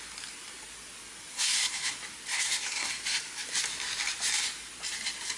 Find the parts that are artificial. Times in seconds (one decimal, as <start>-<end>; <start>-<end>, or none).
1.3-1.9; 2.3-2.9